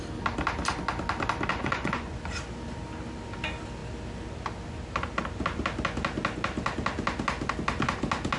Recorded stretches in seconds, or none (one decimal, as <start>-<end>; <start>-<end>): 0.0-1.5; 2.2-8.4